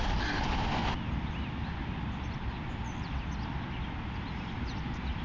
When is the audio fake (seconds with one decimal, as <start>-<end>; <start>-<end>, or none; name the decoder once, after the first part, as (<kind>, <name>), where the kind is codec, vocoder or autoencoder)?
none